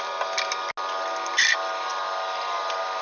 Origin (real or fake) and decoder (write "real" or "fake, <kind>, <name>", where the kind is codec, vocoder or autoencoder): real